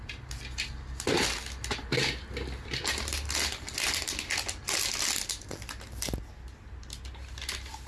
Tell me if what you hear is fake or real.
real